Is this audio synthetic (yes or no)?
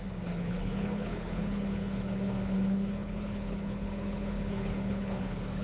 yes